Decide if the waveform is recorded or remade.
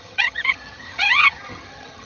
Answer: remade